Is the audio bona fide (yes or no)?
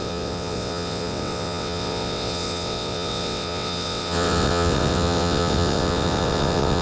no